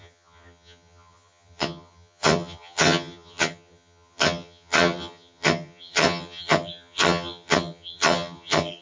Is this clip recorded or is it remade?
remade